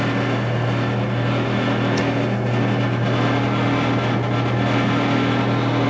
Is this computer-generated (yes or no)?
no